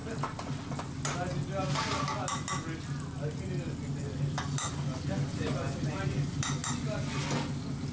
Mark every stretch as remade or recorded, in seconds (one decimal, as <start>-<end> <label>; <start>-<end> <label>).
0.0-7.9 recorded